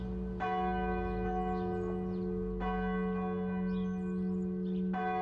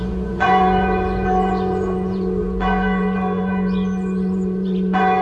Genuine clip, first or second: first